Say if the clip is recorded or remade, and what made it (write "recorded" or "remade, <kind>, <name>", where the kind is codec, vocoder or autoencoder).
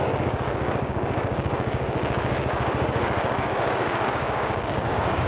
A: remade, codec, DAC